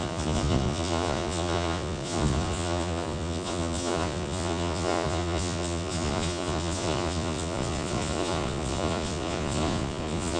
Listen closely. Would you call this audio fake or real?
fake